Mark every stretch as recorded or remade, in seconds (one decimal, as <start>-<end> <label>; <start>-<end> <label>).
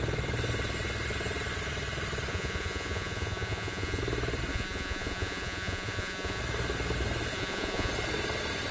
0.0-2.3 recorded; 2.3-4.0 remade; 4.0-4.5 recorded; 4.5-6.4 remade; 6.4-7.3 recorded; 7.3-7.9 remade; 7.9-8.7 recorded